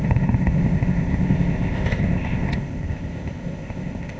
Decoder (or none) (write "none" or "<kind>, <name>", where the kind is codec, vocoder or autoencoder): codec, ZipCodec